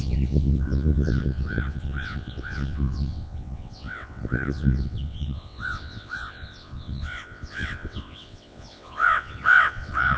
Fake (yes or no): yes